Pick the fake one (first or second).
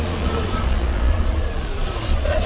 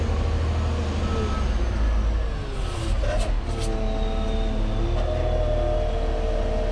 first